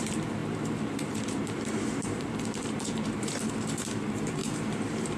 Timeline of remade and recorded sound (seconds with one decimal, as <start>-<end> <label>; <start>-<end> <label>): 0.0-5.2 remade